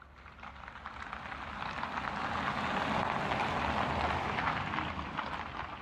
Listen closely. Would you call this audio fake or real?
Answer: real